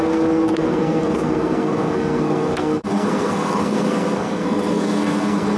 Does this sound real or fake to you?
fake